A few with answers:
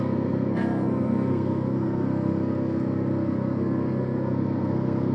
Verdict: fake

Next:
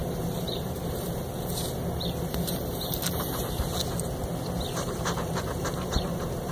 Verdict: fake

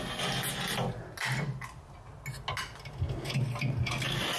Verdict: real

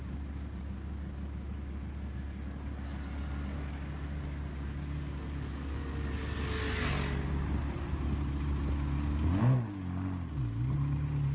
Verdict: real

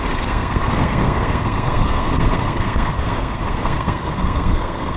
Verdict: fake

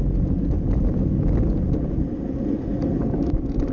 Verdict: real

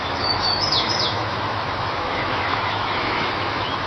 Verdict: fake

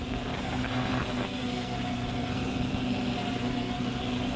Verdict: fake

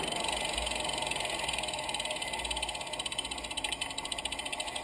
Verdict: real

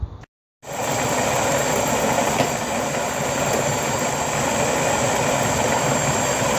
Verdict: real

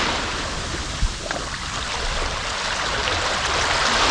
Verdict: real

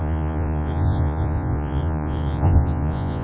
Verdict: fake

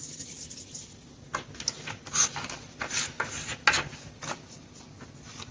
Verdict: real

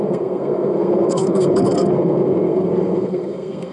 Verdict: fake